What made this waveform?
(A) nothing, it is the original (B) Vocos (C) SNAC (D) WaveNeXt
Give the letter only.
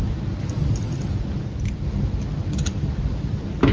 A